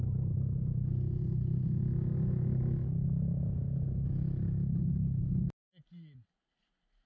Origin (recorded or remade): recorded